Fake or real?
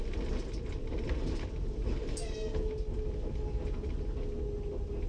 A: real